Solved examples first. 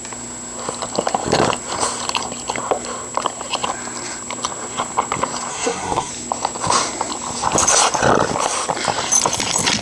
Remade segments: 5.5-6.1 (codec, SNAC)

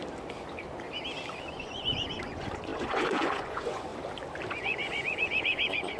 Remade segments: 1.5-3.9 (vocoder, Vocos); 4.5-6.0

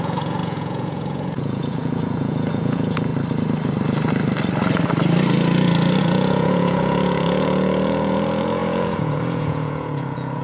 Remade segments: 0.0-3.1 (vocoder, Vocos); 6.0-10.4

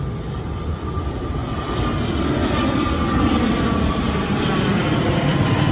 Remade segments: none